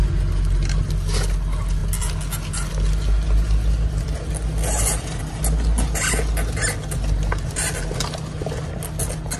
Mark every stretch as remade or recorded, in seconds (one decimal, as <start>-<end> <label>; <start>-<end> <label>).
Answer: 0.0-9.4 recorded